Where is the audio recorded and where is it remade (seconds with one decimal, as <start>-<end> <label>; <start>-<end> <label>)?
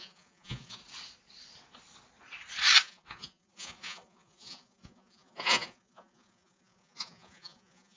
0.0-0.8 remade; 0.8-2.8 recorded; 2.8-8.0 remade